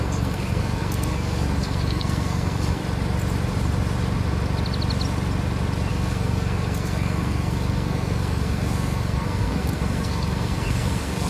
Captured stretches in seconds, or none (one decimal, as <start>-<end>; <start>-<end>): 2.8-5.9